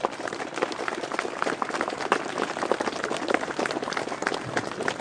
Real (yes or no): yes